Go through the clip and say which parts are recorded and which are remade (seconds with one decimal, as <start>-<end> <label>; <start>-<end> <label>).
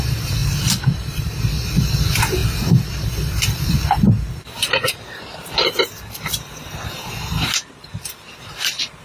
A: 0.0-9.0 remade